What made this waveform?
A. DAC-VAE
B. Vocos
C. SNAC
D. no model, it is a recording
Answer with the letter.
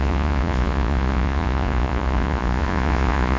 B